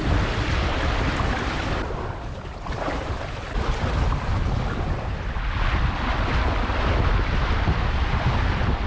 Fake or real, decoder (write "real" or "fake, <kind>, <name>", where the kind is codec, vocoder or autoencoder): real